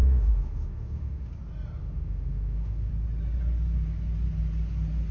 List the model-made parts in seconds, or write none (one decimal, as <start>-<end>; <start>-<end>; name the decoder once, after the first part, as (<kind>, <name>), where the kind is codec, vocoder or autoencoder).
0.0-1.3 (autoencoder, DAC-VAE); 1.8-2.9